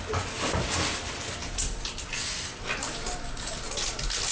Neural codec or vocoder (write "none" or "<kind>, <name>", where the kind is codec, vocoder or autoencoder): none